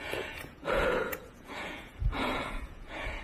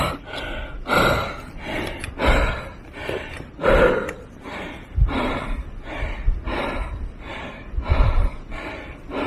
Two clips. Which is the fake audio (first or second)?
first